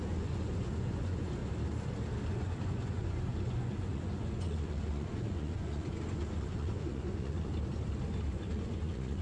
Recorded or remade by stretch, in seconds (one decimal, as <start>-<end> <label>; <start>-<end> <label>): 0.0-1.4 remade; 1.4-2.3 recorded; 2.3-7.5 remade; 7.5-8.3 recorded; 8.3-9.2 remade